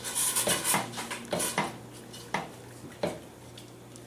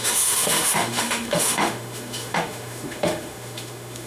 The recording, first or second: first